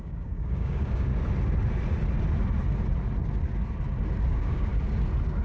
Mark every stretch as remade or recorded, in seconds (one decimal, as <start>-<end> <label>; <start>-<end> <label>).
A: 0.0-1.1 remade; 1.1-4.3 recorded; 4.3-4.7 remade; 4.7-5.4 recorded